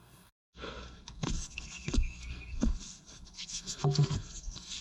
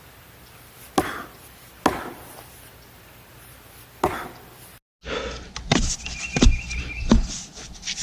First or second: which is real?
second